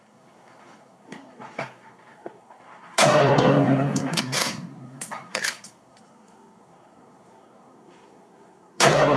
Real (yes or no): no